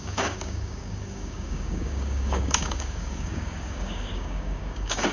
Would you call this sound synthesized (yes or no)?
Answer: yes